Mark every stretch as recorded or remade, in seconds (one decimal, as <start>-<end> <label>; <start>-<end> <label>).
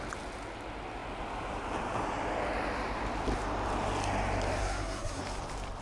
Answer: 0.0-4.6 recorded; 4.6-5.2 remade; 5.2-5.8 recorded